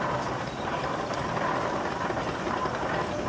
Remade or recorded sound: recorded